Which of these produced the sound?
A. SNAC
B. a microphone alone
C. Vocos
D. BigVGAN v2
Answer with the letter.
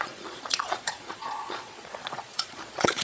C